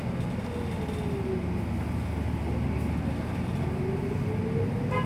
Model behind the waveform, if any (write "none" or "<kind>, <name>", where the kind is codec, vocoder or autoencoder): none